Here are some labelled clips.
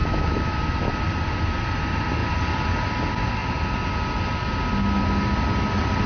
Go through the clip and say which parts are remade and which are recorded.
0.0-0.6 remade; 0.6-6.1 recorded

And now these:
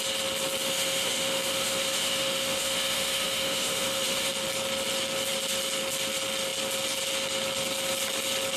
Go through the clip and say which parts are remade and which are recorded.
0.0-0.6 recorded; 0.6-4.3 remade; 4.3-8.6 recorded

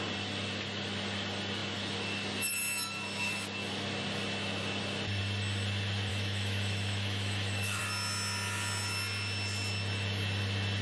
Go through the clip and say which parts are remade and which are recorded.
0.0-6.1 recorded; 6.1-7.8 remade; 7.8-10.8 recorded

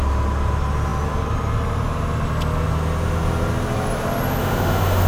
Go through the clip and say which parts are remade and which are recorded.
0.0-4.4 recorded; 4.4-5.1 remade

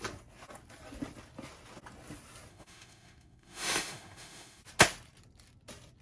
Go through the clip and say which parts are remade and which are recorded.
0.0-2.5 recorded; 2.5-4.6 remade; 4.6-6.0 recorded

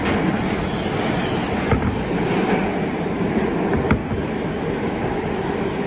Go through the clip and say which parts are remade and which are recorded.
0.0-4.0 recorded; 4.0-5.9 remade

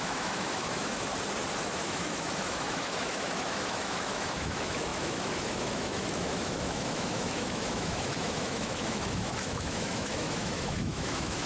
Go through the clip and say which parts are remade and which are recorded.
0.0-1.1 remade; 1.1-1.7 recorded; 1.7-11.5 remade